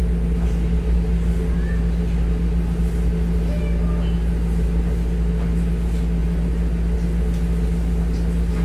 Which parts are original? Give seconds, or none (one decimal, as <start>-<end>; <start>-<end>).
0.0-8.6